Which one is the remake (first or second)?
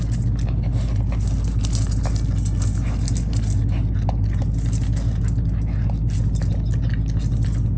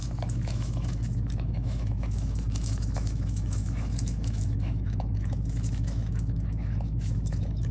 second